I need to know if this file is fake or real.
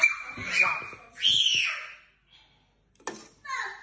real